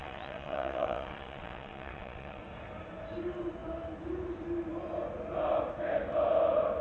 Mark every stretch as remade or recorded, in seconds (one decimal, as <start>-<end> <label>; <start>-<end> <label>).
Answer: 0.0-2.4 remade; 2.4-6.8 recorded